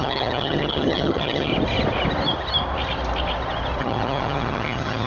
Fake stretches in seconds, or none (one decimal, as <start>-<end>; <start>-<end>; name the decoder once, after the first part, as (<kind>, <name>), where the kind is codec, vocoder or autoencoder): 0.0-1.5 (vocoder, HiFi-GAN); 3.8-5.1